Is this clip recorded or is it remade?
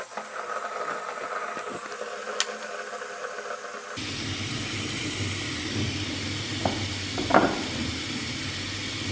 recorded